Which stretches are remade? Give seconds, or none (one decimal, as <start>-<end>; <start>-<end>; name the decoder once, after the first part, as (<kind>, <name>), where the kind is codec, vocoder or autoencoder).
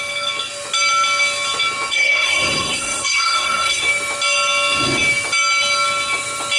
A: 1.9-3.8 (codec, SNAC)